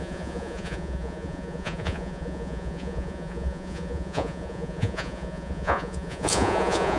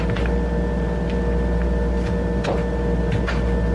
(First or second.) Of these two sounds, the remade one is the first